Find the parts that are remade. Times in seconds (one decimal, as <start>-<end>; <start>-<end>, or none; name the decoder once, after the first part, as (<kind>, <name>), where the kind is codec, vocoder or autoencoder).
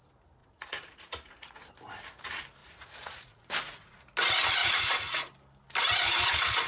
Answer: 0.4-1.7 (vocoder, Vocos); 2.6-4.0; 4.6-5.3